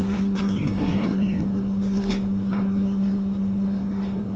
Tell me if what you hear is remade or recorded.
remade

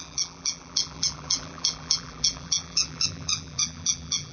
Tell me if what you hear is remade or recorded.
remade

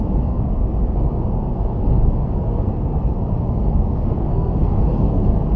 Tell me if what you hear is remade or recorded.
remade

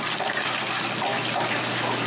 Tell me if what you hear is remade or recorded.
recorded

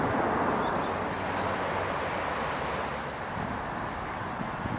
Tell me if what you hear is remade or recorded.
recorded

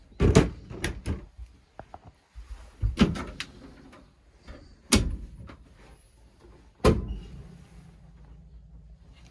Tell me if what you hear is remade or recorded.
recorded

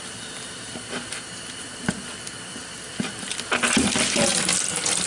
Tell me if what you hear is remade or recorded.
recorded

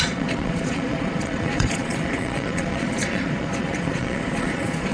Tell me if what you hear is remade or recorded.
remade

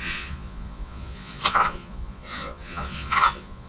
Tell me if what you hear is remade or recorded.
remade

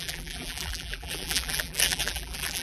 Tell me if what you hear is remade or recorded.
remade